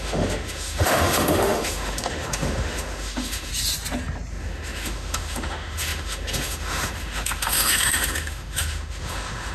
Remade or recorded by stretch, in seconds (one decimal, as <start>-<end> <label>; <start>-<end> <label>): 0.0-3.5 remade; 3.5-4.3 recorded; 4.3-9.5 remade